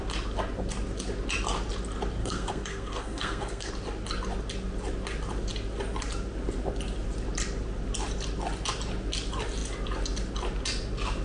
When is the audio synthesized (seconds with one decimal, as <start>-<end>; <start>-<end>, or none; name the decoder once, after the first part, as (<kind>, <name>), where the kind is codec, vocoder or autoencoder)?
2.2-3.7 (codec, SNAC)